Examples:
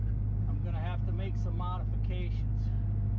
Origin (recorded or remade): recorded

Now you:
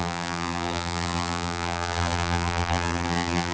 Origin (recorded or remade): remade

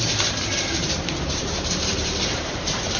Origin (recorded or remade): remade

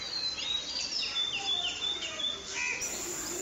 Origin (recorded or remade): recorded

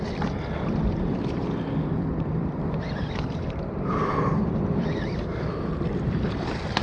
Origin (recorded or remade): remade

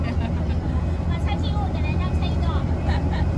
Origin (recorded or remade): recorded